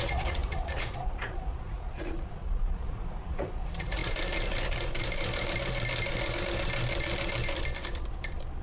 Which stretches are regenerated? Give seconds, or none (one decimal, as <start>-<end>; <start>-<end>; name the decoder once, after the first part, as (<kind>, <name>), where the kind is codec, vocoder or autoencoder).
0.0-4.0 (vocoder, Vocos)